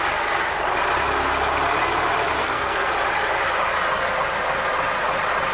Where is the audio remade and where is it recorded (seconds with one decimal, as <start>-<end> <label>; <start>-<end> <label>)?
0.0-2.4 recorded; 2.4-2.9 remade; 2.9-5.5 recorded